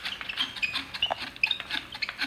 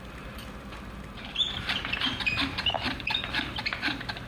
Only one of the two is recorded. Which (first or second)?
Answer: first